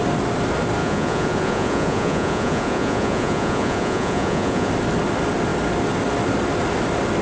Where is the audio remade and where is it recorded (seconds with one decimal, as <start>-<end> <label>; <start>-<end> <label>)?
0.0-0.8 recorded; 0.8-4.7 remade; 4.7-7.2 recorded